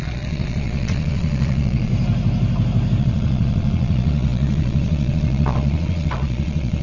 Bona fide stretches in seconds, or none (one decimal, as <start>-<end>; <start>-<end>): 1.9-3.0